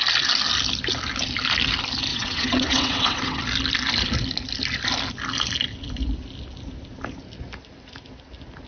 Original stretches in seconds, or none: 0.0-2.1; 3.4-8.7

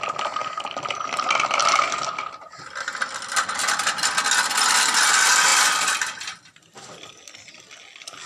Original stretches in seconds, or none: 0.0-8.3

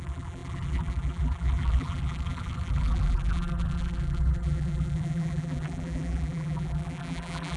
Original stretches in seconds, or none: none

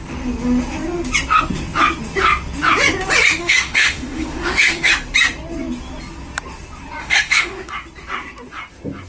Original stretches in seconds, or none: 0.0-3.4; 4.9-7.0; 7.7-9.1

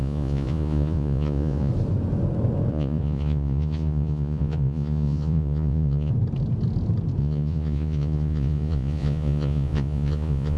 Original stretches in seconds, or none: 1.7-2.7; 6.1-7.2

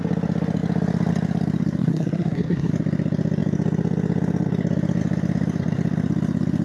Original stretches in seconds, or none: 0.0-1.8; 2.7-6.6

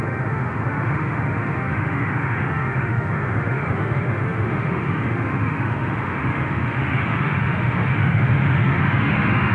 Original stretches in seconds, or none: none

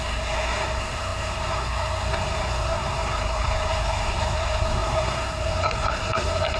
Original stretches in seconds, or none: none